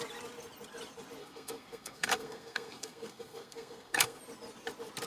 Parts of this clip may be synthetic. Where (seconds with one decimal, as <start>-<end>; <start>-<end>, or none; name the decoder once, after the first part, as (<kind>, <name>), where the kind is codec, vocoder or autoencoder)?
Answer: 1.2-4.2 (codec, SNAC)